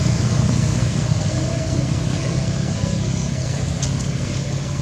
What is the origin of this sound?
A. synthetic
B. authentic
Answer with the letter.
A